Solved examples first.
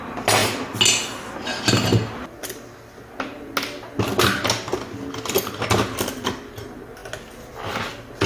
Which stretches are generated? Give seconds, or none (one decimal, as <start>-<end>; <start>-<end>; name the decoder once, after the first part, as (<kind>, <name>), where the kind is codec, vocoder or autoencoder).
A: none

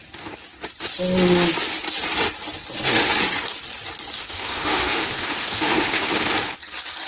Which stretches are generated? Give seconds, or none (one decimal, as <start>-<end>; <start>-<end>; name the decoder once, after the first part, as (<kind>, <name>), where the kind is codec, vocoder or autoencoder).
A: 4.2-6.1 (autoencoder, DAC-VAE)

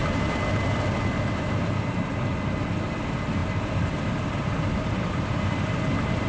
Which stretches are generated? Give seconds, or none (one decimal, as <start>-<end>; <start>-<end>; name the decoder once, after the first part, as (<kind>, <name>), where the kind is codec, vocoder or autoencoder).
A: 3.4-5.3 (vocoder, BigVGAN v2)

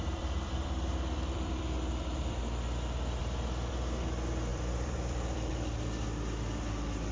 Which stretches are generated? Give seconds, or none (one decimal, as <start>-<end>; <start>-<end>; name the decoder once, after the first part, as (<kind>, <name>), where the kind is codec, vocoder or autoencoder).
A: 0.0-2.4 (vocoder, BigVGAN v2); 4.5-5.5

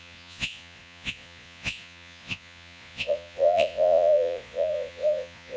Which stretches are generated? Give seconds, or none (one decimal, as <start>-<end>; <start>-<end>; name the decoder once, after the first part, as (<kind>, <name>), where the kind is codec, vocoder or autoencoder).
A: 0.0-5.6 (vocoder, Vocos)